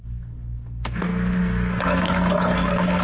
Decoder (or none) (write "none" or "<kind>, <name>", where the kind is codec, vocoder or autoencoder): codec, SNAC